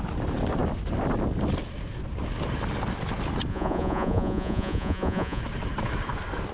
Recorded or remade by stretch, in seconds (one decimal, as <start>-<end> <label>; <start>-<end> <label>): 0.0-3.5 recorded; 3.5-5.4 remade; 5.4-6.5 recorded